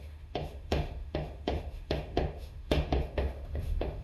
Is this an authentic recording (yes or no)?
no